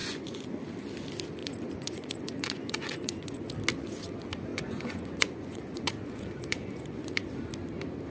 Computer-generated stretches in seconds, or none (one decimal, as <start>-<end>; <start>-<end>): 0.0-0.5; 1.4-3.5; 4.5-7.3